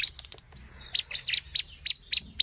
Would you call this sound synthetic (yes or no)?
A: no